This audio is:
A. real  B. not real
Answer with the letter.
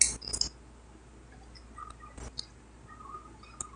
A